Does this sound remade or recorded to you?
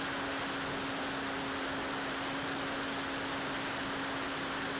recorded